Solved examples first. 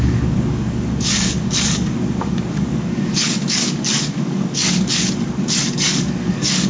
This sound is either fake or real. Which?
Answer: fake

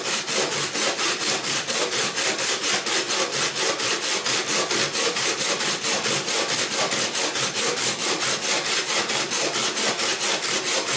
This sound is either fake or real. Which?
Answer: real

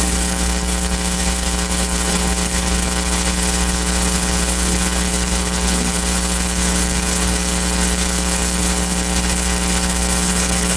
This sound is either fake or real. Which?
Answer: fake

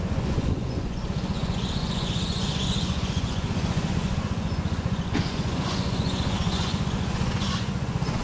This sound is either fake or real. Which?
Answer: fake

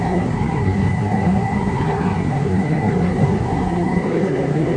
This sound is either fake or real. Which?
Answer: fake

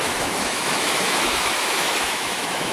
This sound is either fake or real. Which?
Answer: fake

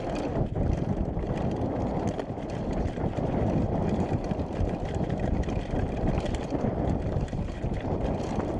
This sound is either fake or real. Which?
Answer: fake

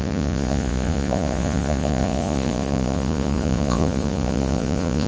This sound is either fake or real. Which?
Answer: fake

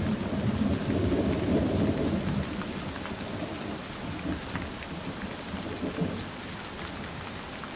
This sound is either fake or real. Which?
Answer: real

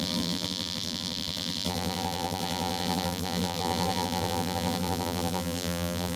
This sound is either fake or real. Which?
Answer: fake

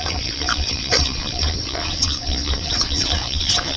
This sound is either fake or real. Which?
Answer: fake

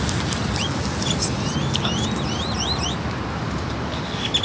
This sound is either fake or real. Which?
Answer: real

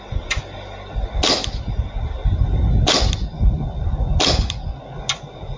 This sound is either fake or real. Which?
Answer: real